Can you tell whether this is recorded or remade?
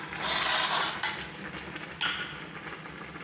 recorded